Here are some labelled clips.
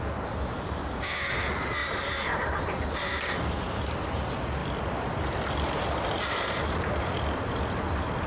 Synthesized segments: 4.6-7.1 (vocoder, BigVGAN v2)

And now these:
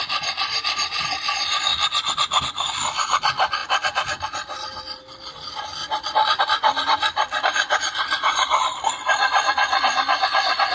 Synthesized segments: 0.0-1.7 (vocoder, BigVGAN v2); 2.4-10.7

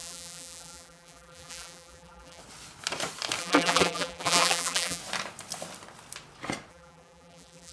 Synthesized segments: 0.0-2.4 (vocoder, BigVGAN v2); 3.4-5.0; 6.7-7.7

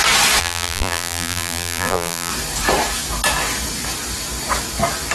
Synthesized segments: 0.4-2.3 (vocoder, BigVGAN v2)

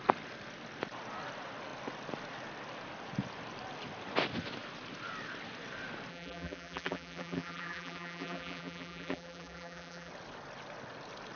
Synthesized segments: 6.1-10.1 (vocoder, BigVGAN v2)

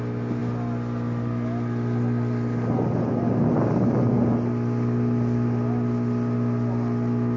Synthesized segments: none

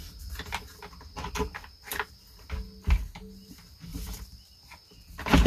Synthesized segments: 3.9-5.0 (vocoder, BigVGAN v2)